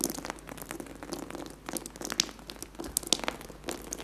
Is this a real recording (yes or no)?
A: yes